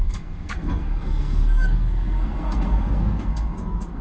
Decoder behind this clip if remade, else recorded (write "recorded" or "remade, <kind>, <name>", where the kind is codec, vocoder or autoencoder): remade, codec, SNAC